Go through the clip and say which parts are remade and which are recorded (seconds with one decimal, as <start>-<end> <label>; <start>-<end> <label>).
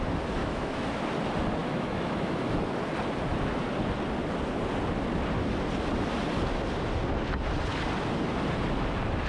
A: 0.0-0.4 recorded; 0.4-1.0 remade; 1.0-1.6 recorded; 1.6-2.5 remade; 2.5-9.3 recorded